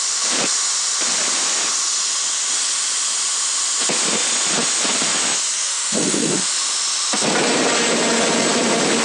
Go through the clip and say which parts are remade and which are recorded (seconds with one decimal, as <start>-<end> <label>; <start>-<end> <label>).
0.0-5.6 recorded; 5.6-6.5 remade; 6.5-9.0 recorded